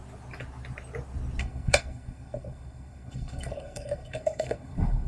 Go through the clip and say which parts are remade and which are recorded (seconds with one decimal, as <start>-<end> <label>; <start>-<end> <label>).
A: 0.0-1.4 recorded; 1.4-5.1 remade